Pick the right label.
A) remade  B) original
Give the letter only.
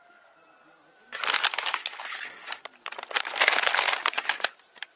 B